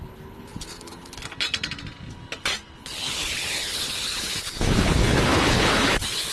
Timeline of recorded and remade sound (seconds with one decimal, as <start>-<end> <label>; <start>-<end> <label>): 0.0-1.2 remade; 1.2-2.8 recorded; 2.8-6.3 remade